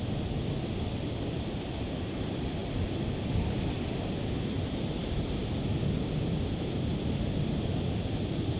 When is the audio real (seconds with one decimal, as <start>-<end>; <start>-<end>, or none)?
0.0-8.6